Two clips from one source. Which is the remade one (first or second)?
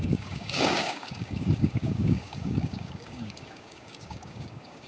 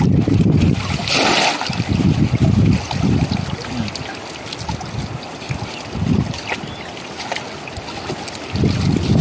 first